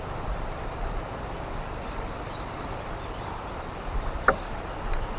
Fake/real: real